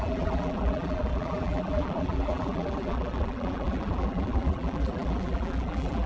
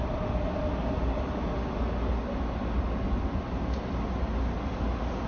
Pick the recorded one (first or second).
second